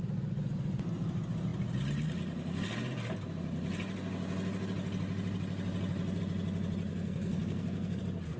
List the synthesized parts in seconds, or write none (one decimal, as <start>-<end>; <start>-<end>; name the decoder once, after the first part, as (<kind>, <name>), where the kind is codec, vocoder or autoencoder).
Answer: 6.9-8.0 (codec, SNAC)